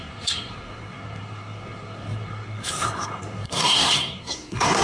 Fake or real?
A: fake